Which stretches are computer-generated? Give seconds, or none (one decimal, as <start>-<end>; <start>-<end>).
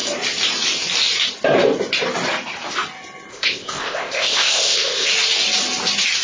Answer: 3.3-5.1